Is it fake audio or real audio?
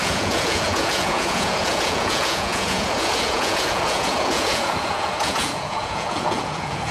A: fake